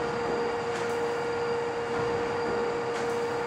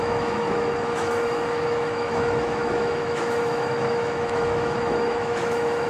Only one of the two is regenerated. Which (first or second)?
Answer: second